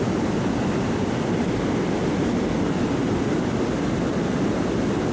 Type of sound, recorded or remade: recorded